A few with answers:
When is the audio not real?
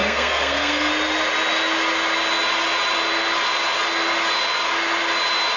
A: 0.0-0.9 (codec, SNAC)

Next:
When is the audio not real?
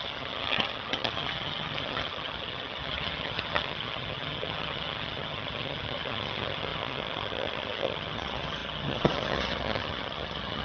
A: 0.0-10.6 (vocoder, HiFi-GAN)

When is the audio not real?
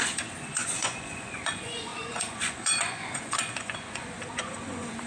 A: 0.0-5.1 (vocoder, Vocos)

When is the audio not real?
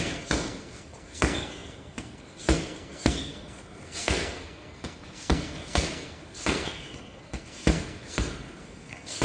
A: 0.0-9.2 (codec, SNAC)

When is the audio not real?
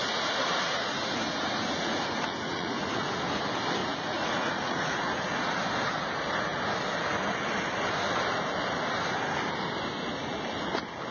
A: 0.0-3.1 (vocoder, Vocos); 3.8-5.5